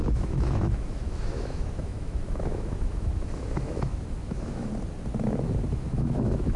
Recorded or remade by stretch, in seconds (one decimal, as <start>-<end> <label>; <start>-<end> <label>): 0.0-4.7 remade; 4.7-5.7 recorded; 5.7-6.6 remade